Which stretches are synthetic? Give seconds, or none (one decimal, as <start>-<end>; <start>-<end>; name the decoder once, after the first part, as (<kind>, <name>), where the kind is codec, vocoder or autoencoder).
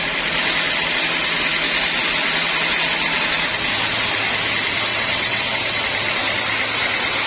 4.9-5.8 (vocoder, WaveNeXt)